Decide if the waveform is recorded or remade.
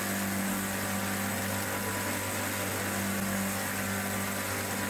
recorded